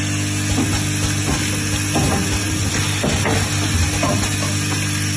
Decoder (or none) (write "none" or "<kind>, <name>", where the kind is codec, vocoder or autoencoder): none